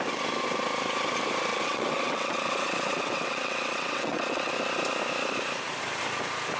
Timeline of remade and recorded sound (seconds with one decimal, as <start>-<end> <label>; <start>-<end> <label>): 0.0-1.5 recorded; 1.5-4.5 remade; 4.5-6.6 recorded